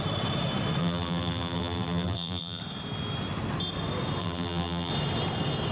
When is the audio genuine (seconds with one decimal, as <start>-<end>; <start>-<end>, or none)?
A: 0.0-0.8; 2.6-4.2; 4.9-5.7